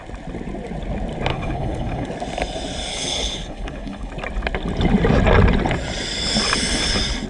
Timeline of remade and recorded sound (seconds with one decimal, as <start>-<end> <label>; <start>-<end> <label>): 0.0-1.3 recorded; 1.3-2.1 remade; 2.1-2.9 recorded; 2.9-4.1 remade; 4.1-7.3 recorded